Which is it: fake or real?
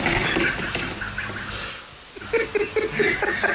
real